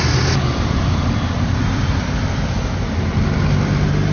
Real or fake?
fake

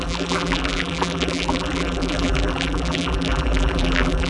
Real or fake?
fake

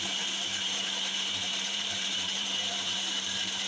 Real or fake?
fake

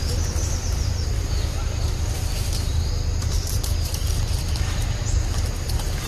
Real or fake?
fake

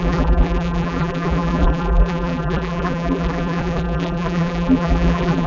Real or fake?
fake